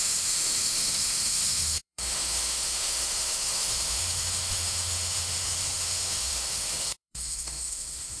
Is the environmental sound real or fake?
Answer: fake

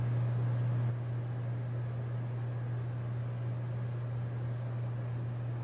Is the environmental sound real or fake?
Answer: real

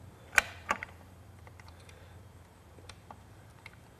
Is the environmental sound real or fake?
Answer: fake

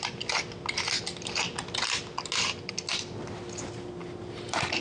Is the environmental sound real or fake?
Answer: real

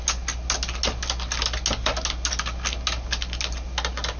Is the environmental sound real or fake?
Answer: real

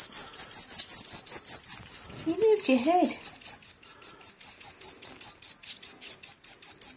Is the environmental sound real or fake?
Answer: real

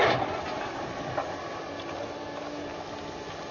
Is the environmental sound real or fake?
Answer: real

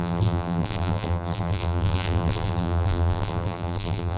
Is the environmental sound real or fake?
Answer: fake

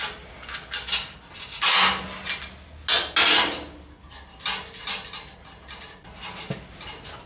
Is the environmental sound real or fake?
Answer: real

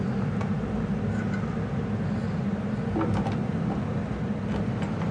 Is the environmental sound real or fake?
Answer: real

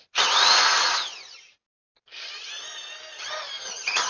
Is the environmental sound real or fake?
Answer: real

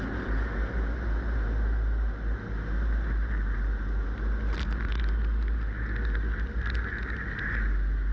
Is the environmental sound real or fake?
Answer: real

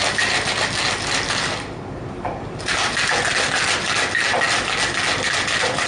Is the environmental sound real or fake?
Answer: real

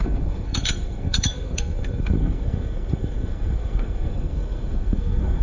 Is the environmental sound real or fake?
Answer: fake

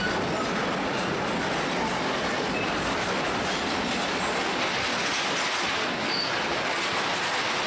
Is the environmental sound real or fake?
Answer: real